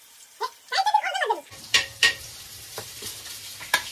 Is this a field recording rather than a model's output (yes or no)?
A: no